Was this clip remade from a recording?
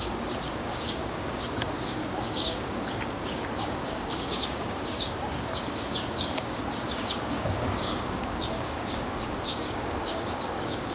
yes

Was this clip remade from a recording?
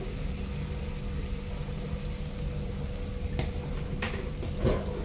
no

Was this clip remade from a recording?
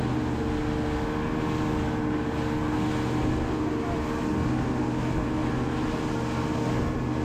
no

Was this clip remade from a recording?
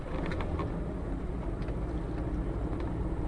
no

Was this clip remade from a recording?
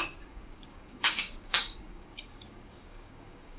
yes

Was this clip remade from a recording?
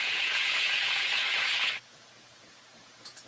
yes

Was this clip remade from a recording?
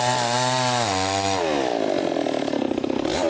no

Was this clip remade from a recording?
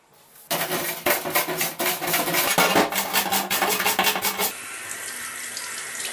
no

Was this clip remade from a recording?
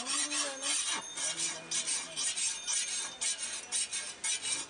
no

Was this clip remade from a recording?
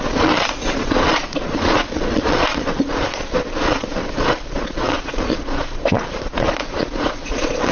yes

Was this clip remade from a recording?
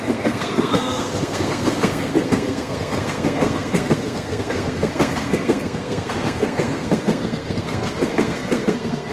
yes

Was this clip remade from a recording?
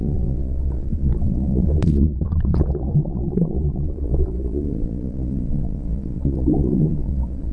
yes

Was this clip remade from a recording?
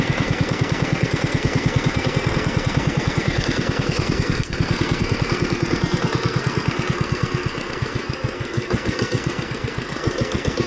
yes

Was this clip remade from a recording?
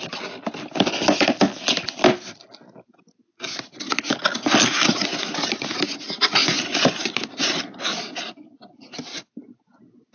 no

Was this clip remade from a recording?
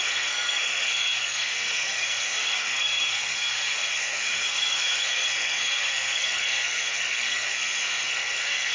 yes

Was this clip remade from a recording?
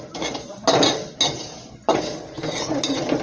no